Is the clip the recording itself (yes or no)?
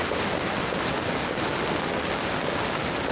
yes